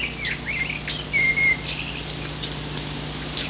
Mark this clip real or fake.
real